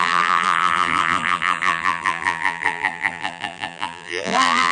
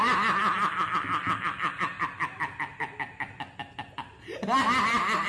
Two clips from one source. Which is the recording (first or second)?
second